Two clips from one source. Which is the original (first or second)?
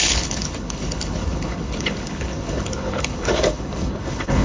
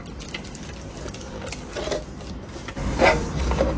second